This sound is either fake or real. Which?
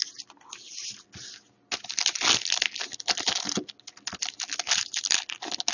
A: real